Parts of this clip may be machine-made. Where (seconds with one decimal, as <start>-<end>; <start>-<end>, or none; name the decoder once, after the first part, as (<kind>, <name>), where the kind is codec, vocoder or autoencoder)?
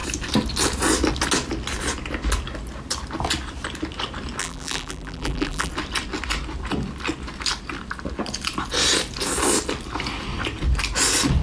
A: 4.4-5.7 (vocoder, BigVGAN v2)